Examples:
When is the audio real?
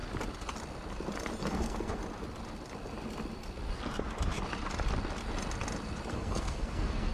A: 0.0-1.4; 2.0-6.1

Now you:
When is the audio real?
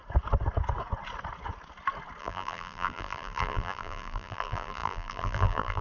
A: 0.0-2.2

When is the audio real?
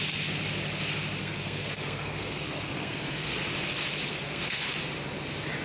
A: 0.0-1.2; 3.4-4.1; 4.6-5.6